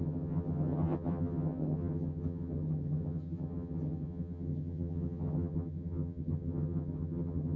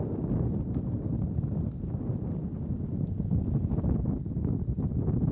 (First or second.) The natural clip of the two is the second